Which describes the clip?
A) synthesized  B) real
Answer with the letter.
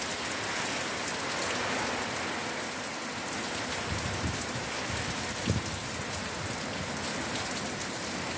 B